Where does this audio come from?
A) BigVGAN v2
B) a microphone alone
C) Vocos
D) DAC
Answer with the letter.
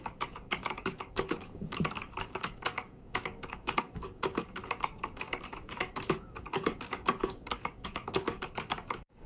D